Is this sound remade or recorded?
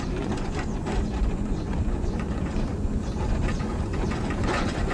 remade